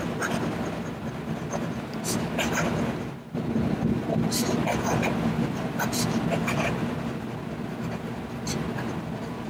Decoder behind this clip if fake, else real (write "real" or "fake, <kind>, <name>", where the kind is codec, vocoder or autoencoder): real